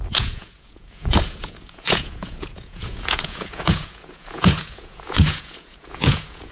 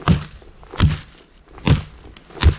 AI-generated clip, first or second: first